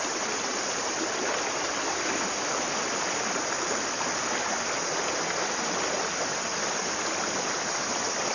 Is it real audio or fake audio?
real